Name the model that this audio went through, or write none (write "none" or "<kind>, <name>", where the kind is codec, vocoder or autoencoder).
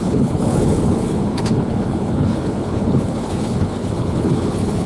codec, HILCodec